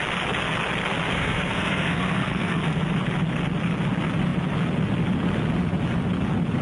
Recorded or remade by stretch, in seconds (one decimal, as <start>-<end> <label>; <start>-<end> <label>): 0.0-1.1 recorded; 1.1-2.8 remade; 2.8-6.6 recorded